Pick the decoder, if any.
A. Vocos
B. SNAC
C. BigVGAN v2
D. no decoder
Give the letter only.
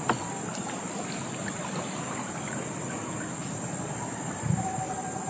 D